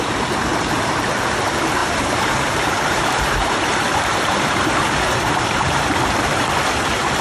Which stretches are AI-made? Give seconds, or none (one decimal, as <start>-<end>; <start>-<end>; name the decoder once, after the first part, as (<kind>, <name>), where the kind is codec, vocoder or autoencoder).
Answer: 1.8-6.0 (vocoder, BigVGAN v2)